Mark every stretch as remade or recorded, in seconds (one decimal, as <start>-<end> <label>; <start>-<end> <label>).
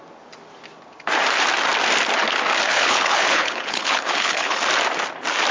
0.0-2.7 recorded; 2.7-4.6 remade; 4.6-5.5 recorded